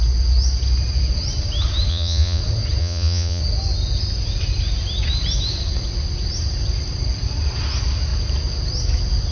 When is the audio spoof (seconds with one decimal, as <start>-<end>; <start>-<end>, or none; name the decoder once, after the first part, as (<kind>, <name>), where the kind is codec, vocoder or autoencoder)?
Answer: 1.9-2.4 (vocoder, Vocos); 2.8-3.4